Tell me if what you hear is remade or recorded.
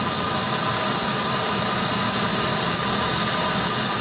recorded